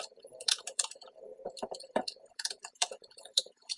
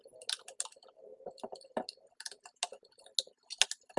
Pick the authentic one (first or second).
second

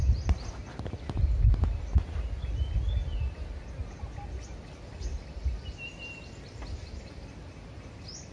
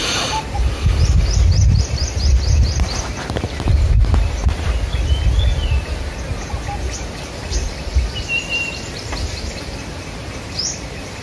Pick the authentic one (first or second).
first